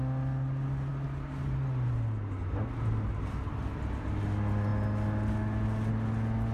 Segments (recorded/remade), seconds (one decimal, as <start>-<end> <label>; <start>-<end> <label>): 0.0-6.5 recorded